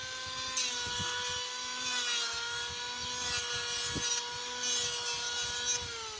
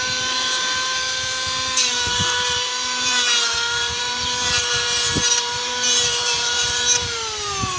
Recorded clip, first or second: first